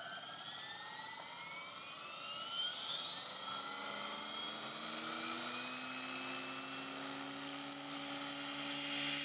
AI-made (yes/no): no